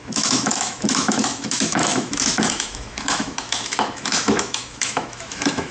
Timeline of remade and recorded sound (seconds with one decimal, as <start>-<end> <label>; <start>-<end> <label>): 0.0-5.7 remade